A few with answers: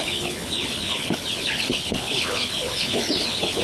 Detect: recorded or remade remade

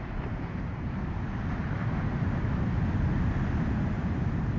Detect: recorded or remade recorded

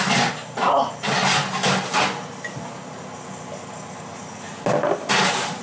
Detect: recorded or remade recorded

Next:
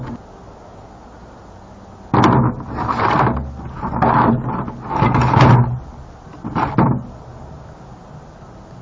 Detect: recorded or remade recorded